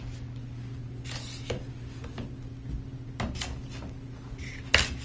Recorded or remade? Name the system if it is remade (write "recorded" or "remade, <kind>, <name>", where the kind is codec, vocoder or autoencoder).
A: recorded